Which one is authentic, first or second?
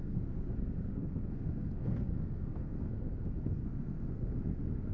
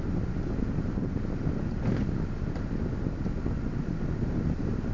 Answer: second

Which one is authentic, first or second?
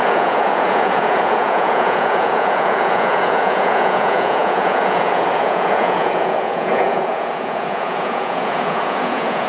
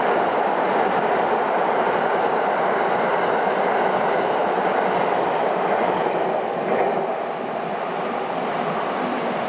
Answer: second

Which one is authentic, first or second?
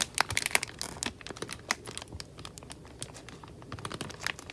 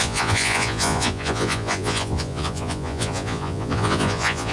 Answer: first